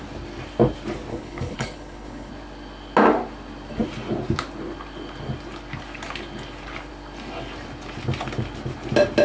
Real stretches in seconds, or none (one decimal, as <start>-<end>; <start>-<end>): 0.0-1.1; 2.3-9.2